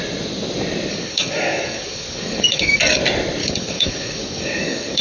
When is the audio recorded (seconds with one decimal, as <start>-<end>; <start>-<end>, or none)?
0.0-0.9; 3.0-3.4